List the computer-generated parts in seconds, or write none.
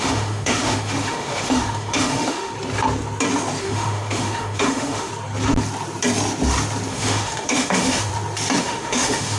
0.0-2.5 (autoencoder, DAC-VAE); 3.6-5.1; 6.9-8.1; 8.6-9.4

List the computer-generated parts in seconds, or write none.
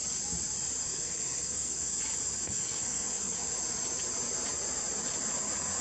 0.8-2.0 (codec, SNAC); 2.4-3.5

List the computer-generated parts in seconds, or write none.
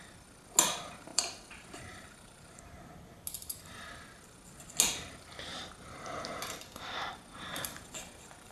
1.1-2.8 (vocoder, BigVGAN v2)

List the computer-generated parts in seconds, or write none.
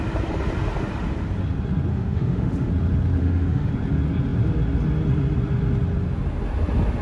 1.9-2.7 (autoencoder, DAC-VAE); 3.2-3.7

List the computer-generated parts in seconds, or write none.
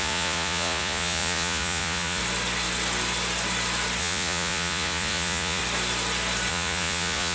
0.0-2.2 (vocoder, Vocos); 4.0-5.6; 6.5-7.3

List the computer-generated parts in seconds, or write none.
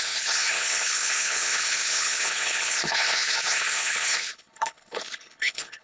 0.0-5.8 (codec, HILCodec)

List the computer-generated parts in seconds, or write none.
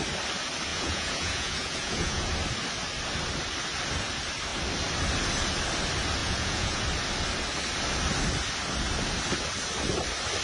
0.7-2.3 (vocoder, Vocos); 6.2-6.8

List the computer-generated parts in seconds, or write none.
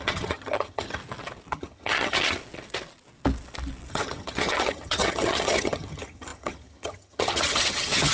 0.0-1.0 (vocoder, HiFi-GAN); 1.5-2.4; 3.9-8.1